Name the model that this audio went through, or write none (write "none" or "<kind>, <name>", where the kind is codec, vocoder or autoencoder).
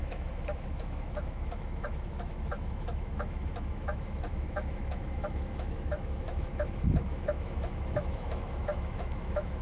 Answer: autoencoder, DAC-VAE